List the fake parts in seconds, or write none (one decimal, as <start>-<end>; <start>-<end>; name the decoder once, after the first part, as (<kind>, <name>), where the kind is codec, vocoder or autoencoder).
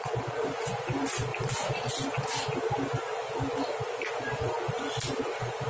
none